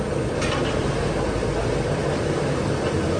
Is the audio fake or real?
real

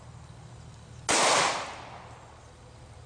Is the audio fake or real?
real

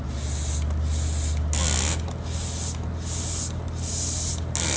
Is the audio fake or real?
real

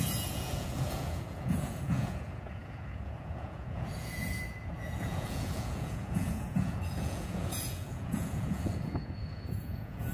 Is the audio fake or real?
fake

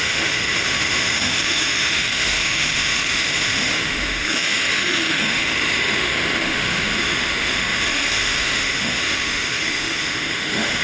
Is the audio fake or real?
fake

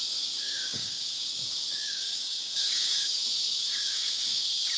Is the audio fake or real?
fake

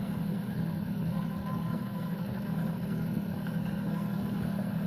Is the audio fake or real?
fake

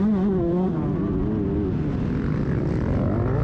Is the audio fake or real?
real